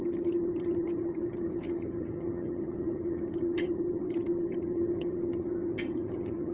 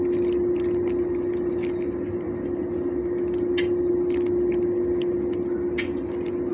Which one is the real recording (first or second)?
second